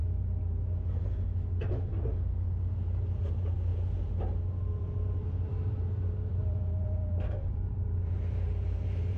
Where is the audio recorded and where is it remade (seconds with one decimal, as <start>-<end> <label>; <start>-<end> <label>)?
0.0-3.2 recorded; 3.2-3.7 remade; 3.7-4.8 recorded; 4.8-9.2 remade